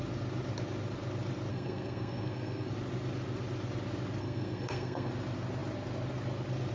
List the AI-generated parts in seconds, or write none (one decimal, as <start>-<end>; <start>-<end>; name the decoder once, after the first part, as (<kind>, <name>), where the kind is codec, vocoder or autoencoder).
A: 1.5-2.7 (codec, SNAC); 4.2-5.1